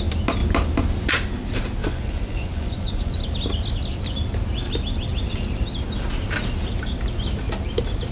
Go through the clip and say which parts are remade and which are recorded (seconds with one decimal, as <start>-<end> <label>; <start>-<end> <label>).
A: 0.0-1.8 recorded; 1.8-3.2 remade; 3.2-8.1 recorded